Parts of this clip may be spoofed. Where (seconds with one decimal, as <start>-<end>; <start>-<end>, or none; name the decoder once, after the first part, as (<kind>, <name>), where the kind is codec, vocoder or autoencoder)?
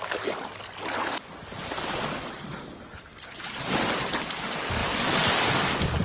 4.8-5.3 (vocoder, BigVGAN v2)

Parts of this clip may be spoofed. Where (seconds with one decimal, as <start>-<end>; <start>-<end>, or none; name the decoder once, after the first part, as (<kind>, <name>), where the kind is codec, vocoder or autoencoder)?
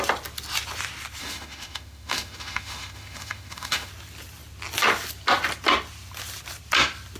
1.2-3.9 (autoencoder, DAC-VAE)